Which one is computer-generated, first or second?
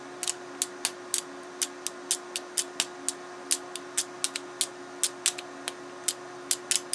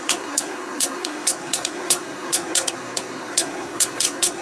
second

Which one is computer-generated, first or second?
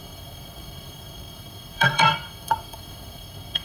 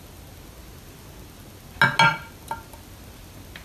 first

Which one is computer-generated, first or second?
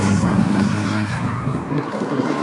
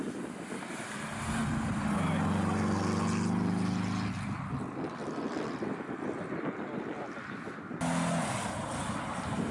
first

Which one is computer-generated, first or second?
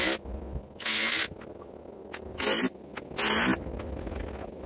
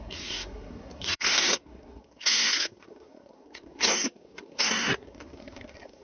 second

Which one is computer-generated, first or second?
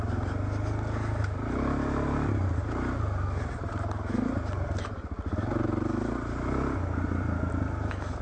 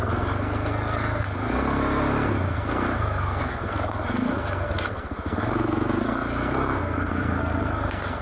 second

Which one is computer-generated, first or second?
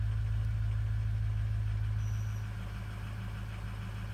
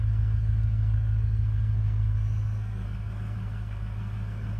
second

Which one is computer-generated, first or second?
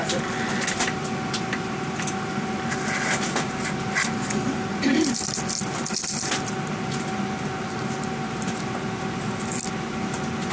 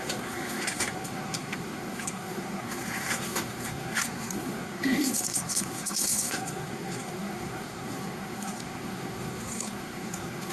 second